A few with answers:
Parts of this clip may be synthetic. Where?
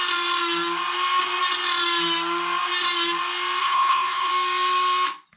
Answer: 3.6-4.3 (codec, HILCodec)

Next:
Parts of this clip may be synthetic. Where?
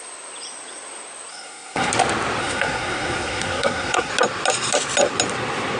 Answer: 1.3-1.9 (codec, SNAC); 2.4-4.1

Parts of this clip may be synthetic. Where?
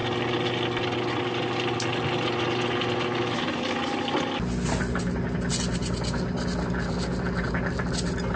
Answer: none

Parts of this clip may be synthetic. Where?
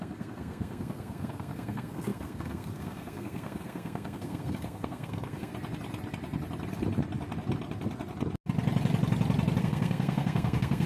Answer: 0.0-5.5 (codec, SNAC); 9.6-10.9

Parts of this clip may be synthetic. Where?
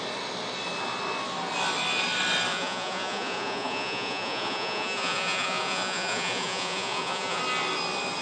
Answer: 2.5-7.4 (vocoder, Vocos)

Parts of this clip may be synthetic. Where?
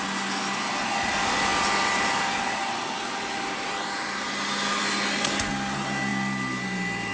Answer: none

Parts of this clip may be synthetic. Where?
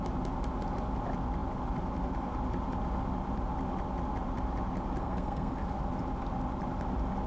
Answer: 5.0-5.6 (codec, SNAC)